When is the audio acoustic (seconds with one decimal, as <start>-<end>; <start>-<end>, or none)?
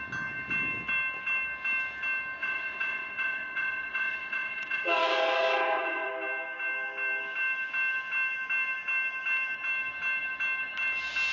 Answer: 0.0-2.4; 6.1-11.3